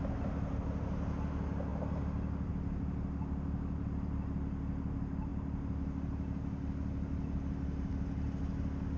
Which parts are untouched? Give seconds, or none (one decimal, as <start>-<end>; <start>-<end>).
0.0-9.0